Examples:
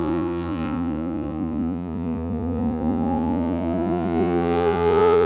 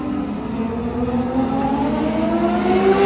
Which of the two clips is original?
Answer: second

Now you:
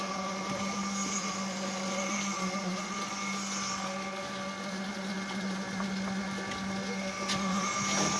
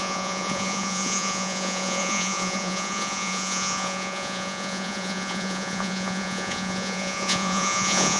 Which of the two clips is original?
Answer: first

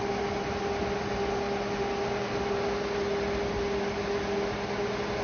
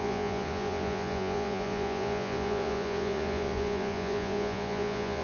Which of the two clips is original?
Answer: first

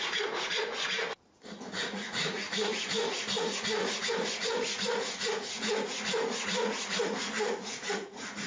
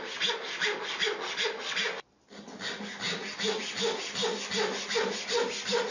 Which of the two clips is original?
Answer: second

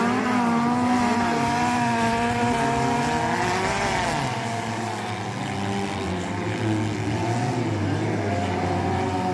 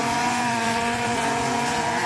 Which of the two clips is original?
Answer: first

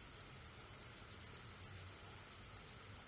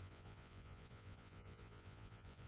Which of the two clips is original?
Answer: first